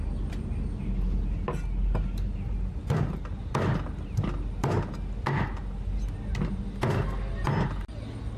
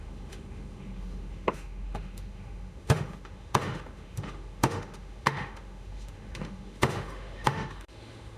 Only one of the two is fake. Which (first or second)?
second